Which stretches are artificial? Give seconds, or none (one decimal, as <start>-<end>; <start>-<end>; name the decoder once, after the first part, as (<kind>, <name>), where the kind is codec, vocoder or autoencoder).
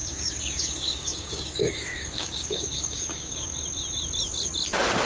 0.0-3.5 (codec, DAC)